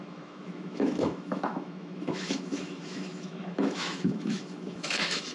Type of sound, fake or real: fake